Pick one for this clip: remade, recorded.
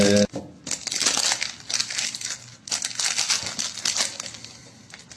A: recorded